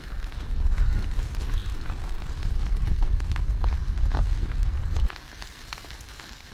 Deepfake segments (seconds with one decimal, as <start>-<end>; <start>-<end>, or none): 0.0-6.5